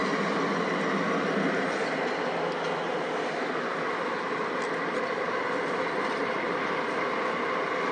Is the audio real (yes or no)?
yes